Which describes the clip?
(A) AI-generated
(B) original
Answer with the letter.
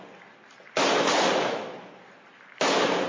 B